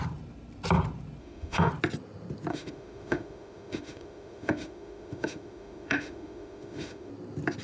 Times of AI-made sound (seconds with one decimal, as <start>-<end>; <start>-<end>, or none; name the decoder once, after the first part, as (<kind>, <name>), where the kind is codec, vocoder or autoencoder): 1.2-1.7 (autoencoder, DAC-VAE); 2.5-7.1